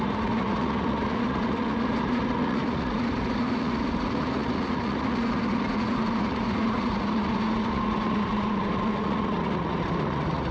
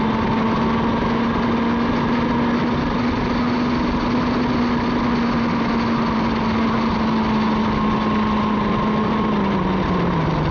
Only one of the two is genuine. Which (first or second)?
second